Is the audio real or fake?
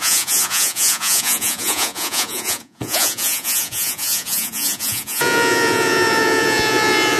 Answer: fake